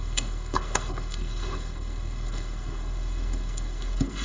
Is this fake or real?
fake